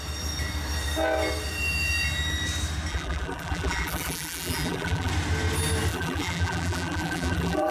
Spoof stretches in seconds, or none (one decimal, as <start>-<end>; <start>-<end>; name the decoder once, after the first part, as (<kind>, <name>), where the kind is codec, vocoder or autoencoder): 2.9-5.1 (vocoder, BigVGAN v2); 5.9-7.7